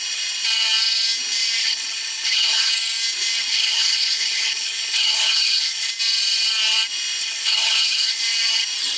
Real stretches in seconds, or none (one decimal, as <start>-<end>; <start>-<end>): 0.0-1.6; 2.7-3.5; 5.9-7.2; 8.2-9.0